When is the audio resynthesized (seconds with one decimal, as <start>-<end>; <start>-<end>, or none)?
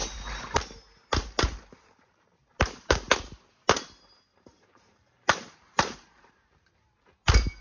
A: 0.0-0.6; 1.5-3.1; 4.3-6.5